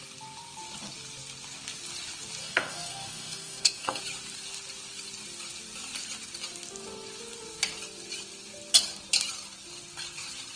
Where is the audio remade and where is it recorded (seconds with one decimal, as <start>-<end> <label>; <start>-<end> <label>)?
0.0-2.4 recorded; 2.4-4.0 remade; 4.0-10.6 recorded